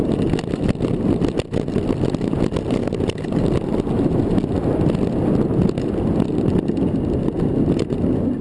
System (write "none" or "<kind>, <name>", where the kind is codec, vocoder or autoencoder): none